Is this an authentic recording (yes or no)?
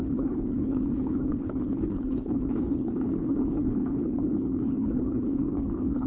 no